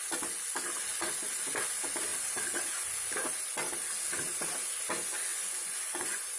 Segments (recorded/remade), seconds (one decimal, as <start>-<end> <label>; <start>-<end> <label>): 0.0-5.3 recorded; 5.3-6.4 remade